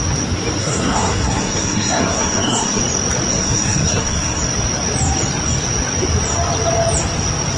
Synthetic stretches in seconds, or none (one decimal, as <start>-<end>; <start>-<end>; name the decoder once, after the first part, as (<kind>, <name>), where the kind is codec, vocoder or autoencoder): 0.6-2.8 (codec, SNAC); 3.3-4.4